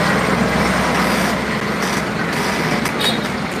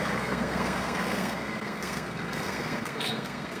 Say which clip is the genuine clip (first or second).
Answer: first